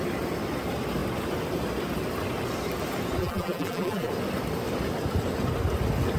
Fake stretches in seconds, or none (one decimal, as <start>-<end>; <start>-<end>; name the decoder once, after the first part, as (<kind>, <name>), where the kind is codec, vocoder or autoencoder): 3.2-4.1 (vocoder, BigVGAN v2)